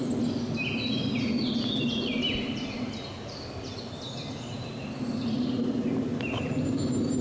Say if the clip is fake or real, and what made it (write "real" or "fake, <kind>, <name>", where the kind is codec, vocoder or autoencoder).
real